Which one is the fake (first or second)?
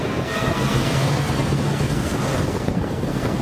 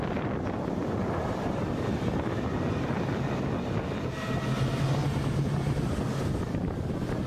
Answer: first